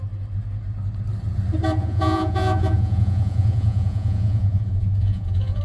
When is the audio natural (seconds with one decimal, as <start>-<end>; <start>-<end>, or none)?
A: 0.0-1.8